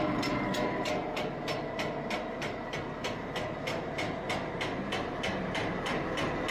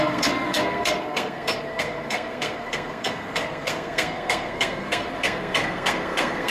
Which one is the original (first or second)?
first